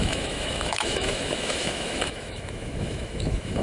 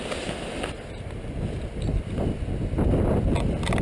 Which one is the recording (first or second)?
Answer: second